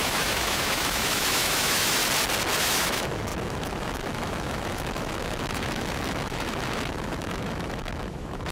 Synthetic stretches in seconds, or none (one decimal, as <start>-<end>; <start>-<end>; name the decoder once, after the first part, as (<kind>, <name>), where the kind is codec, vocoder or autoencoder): 0.0-2.0 (autoencoder, DAC-VAE); 2.6-8.5